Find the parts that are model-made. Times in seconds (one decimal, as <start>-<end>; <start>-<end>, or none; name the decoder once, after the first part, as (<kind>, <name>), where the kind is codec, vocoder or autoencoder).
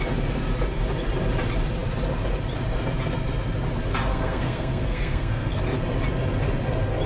4.1-5.6 (codec, SNAC)